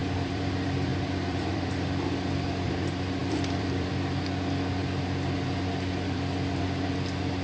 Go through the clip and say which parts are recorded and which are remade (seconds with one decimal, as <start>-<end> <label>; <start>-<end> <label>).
0.0-0.5 remade; 0.5-0.9 recorded; 0.9-2.7 remade; 2.7-3.2 recorded; 3.2-3.9 remade; 3.9-7.4 recorded